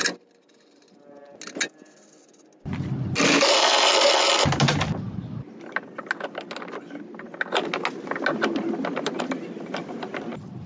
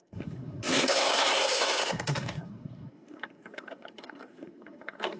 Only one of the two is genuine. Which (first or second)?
first